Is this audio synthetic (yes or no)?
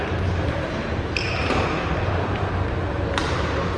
yes